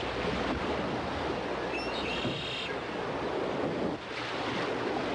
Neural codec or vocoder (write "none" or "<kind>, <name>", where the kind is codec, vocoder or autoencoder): none